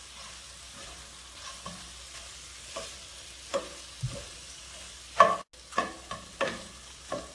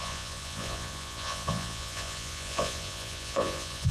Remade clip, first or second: second